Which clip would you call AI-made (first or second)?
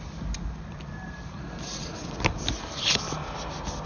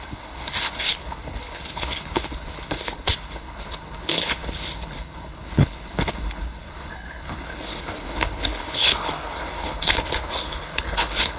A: second